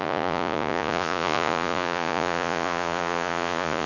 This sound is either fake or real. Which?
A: fake